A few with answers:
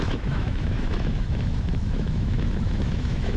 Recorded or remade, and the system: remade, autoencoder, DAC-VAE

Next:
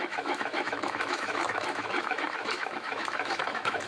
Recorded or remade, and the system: remade, autoencoder, DAC-VAE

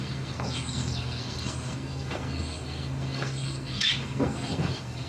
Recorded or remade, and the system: remade, codec, SNAC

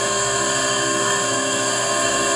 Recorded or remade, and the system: remade, codec, SNAC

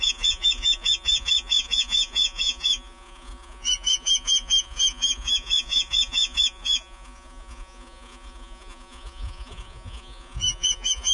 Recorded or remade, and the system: remade, vocoder, Vocos